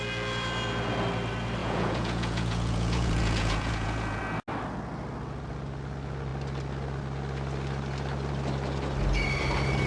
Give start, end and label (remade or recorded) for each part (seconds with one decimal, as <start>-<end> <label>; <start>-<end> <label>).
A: 0.0-1.6 recorded; 1.6-4.2 remade; 4.2-9.9 recorded